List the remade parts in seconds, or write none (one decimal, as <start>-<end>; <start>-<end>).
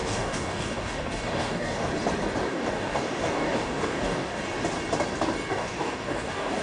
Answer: 0.0-1.9; 2.4-4.4; 5.5-6.6